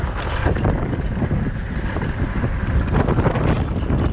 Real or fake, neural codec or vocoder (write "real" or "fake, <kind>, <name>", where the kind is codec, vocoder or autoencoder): real